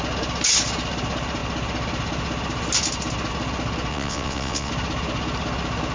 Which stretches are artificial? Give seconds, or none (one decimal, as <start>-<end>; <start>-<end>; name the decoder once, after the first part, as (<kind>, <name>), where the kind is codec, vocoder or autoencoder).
3.9-4.7 (vocoder, WaveNeXt)